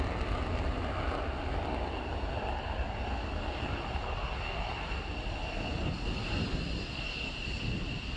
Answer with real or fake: real